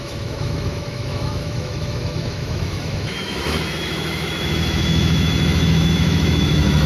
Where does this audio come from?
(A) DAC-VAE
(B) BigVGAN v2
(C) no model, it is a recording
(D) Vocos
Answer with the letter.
A